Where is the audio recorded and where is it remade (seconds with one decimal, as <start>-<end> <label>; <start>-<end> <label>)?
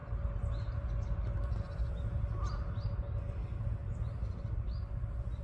0.0-5.4 recorded